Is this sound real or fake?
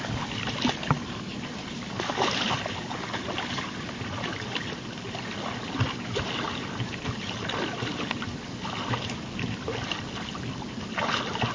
real